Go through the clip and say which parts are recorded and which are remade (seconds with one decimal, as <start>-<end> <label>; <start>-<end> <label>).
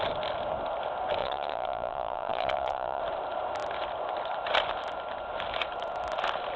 0.0-1.2 recorded; 1.2-3.0 remade; 3.0-6.6 recorded